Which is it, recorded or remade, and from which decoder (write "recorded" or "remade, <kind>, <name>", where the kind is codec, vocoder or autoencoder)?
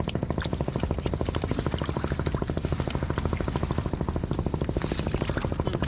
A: recorded